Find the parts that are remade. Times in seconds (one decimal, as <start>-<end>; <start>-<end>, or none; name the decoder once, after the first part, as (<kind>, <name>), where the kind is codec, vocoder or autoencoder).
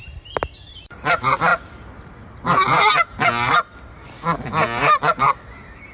none